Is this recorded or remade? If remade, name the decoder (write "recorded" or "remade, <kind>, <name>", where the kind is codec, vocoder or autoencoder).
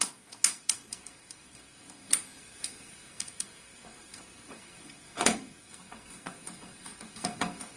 remade, codec, SNAC